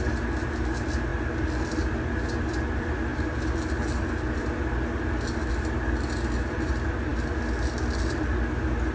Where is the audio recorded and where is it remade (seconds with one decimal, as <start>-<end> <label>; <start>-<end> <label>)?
0.0-8.9 recorded